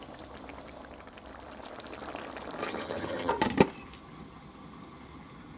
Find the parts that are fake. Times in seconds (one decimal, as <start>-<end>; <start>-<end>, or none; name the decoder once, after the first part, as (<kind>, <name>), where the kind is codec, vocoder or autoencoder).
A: 2.6-3.3 (vocoder, HiFi-GAN)